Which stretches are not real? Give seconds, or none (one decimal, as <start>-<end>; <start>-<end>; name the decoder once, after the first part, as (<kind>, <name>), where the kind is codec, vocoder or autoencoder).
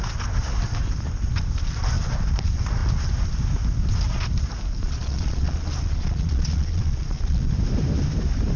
4.8-7.5 (vocoder, Vocos)